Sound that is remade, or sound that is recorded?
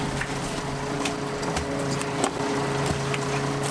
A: recorded